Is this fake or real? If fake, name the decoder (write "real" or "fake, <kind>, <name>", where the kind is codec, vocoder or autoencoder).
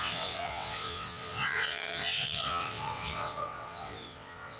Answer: fake, vocoder, WaveNeXt